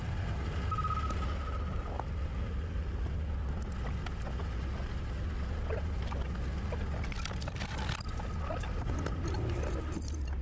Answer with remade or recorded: recorded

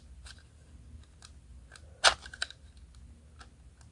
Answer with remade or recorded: recorded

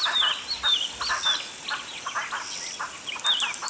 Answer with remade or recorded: recorded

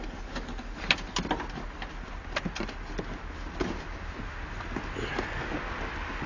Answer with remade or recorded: recorded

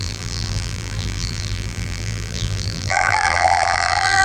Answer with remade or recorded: remade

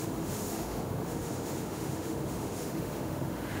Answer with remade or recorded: remade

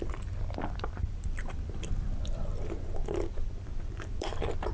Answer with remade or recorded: remade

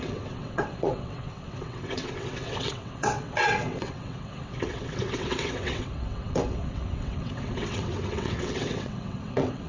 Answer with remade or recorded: remade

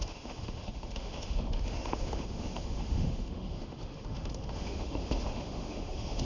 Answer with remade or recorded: remade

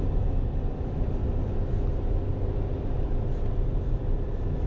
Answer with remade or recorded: recorded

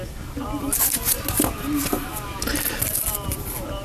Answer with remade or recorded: recorded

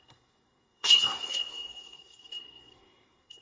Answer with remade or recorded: remade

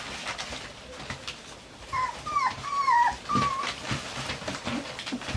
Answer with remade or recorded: recorded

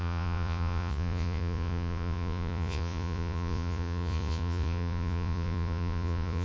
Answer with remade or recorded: remade